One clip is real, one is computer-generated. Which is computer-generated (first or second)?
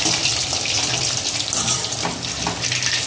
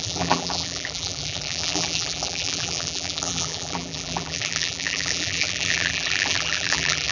second